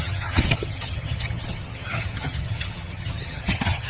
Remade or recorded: remade